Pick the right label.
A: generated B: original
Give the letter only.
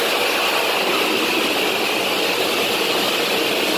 B